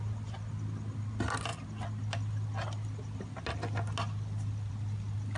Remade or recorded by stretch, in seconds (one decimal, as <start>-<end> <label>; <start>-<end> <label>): 0.0-5.4 recorded